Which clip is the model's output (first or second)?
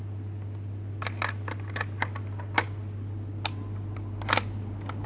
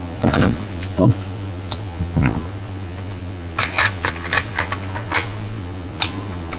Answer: second